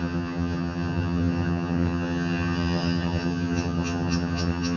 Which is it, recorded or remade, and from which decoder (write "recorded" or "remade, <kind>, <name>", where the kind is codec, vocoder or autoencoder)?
remade, vocoder, HiFi-GAN